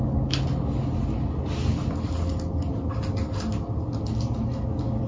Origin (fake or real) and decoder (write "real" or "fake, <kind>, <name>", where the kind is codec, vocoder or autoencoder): real